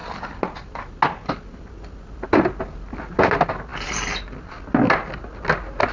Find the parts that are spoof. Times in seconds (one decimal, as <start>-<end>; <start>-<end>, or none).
none